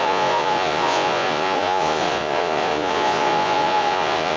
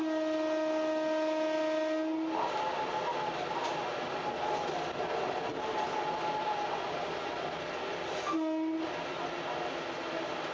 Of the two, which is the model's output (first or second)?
first